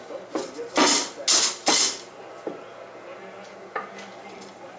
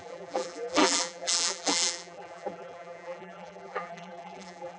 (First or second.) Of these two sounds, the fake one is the second